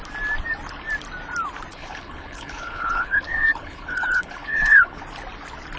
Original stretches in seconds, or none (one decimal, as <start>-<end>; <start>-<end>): 0.0-1.7; 5.0-5.8